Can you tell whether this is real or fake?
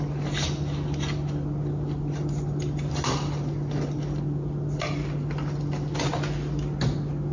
real